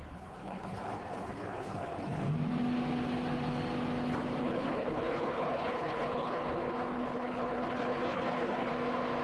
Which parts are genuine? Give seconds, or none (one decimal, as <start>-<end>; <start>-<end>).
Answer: 2.2-4.4; 8.7-9.2